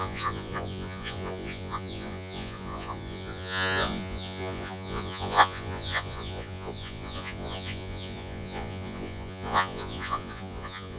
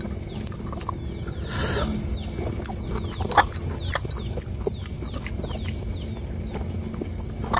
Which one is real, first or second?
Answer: second